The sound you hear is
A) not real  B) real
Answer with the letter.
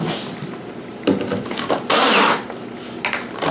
B